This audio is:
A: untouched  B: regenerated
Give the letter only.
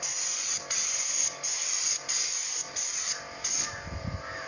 A